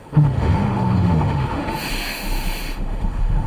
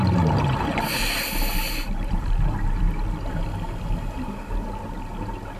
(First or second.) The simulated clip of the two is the first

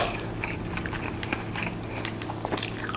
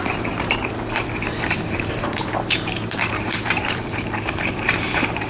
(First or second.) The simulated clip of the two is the second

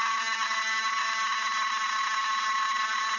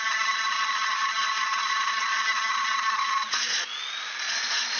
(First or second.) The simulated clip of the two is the second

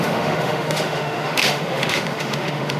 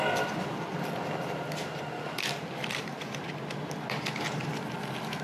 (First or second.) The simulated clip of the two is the first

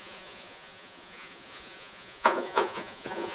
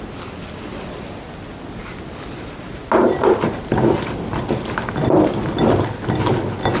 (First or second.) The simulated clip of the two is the first